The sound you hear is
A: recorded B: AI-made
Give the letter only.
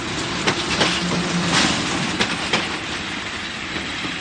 A